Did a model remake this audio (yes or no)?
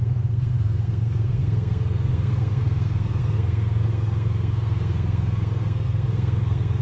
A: yes